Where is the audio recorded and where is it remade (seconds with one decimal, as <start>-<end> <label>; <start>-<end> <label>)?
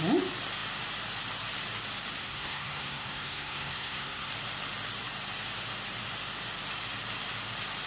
0.0-2.2 recorded; 2.2-4.3 remade; 4.3-7.9 recorded